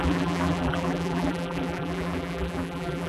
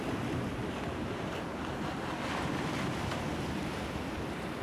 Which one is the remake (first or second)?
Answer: first